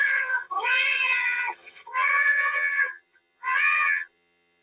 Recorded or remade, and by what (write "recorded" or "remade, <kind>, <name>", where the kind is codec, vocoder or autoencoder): remade, vocoder, HiFi-GAN